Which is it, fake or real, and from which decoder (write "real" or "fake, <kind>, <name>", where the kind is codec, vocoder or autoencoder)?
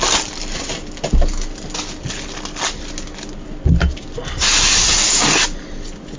real